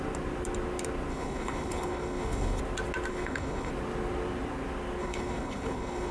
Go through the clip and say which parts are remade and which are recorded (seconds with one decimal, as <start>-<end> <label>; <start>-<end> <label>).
0.0-1.1 recorded; 1.1-2.6 remade; 2.6-3.1 recorded; 3.1-3.7 remade; 3.7-5.0 recorded; 5.0-6.1 remade